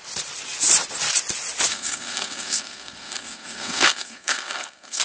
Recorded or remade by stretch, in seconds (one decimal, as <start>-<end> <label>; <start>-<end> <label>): 0.0-1.7 recorded; 1.7-5.0 remade